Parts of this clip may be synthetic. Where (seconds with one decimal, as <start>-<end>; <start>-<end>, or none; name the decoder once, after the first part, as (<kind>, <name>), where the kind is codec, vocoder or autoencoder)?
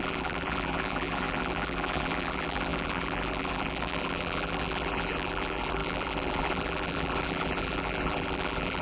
0.0-8.8 (vocoder, BigVGAN v2)